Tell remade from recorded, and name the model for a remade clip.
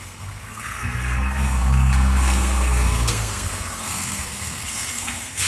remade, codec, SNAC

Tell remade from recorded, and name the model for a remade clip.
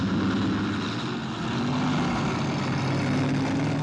recorded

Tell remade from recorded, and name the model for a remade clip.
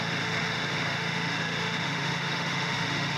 remade, autoencoder, DAC-VAE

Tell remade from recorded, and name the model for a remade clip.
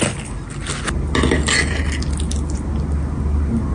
recorded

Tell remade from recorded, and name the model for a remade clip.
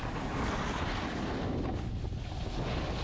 recorded